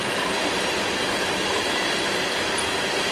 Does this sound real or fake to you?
real